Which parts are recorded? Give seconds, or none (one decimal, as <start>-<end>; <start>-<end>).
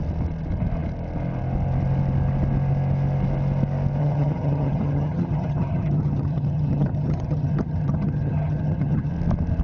0.0-4.0; 9.1-9.6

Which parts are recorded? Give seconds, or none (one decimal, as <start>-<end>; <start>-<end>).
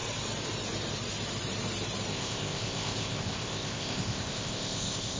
0.0-2.1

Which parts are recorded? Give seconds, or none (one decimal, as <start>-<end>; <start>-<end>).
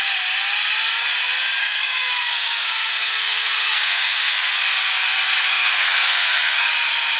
0.0-1.6; 4.5-5.5; 6.7-7.2